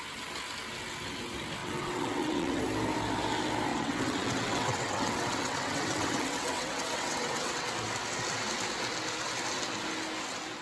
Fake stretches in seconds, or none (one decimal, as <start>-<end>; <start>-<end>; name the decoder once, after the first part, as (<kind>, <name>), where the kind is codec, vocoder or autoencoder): 1.6-2.6 (vocoder, WaveNeXt); 3.7-7.7